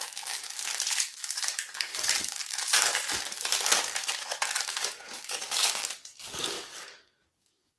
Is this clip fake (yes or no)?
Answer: yes